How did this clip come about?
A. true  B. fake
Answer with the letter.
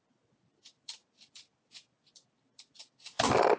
B